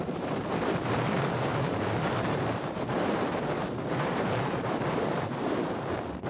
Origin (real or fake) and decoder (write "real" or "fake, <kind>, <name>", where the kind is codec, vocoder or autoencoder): fake, vocoder, BigVGAN v2